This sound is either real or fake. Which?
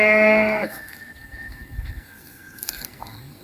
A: fake